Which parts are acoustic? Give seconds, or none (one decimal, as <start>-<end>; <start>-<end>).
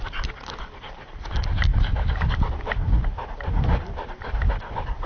0.0-5.1